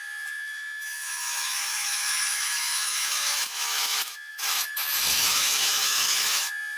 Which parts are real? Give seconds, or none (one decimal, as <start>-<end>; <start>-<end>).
none